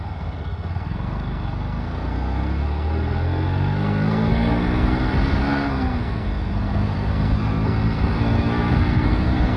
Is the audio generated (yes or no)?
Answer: yes